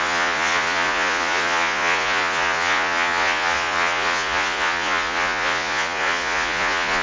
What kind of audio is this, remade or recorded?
remade